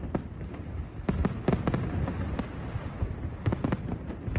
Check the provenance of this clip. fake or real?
real